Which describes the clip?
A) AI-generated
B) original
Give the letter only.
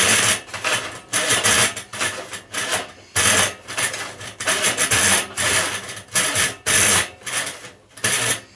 B